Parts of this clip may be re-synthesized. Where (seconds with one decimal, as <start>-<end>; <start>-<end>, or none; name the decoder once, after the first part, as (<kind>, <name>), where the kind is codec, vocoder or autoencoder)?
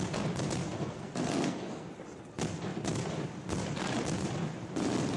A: 0.6-1.9 (codec, SNAC)